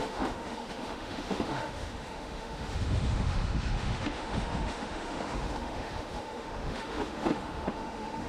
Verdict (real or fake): fake